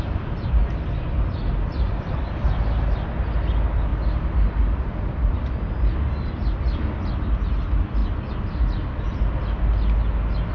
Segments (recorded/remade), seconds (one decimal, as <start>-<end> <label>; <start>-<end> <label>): 0.0-10.5 recorded